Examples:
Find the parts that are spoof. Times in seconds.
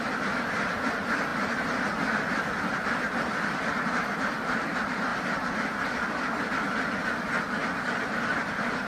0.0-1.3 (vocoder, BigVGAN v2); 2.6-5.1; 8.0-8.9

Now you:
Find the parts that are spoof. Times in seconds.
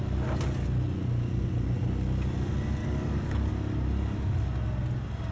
2.8-3.5 (codec, DAC)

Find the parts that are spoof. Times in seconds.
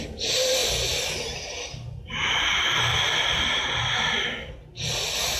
none